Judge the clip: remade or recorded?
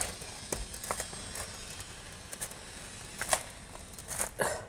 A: recorded